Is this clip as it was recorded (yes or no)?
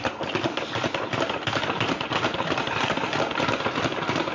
no